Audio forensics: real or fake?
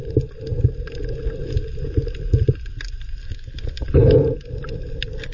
real